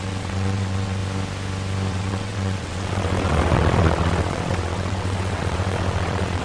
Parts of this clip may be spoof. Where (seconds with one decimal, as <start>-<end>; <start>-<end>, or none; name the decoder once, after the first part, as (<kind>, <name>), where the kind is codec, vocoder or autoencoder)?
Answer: 0.0-1.0 (vocoder, WaveNeXt); 1.9-6.4